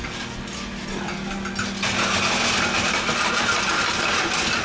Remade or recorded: recorded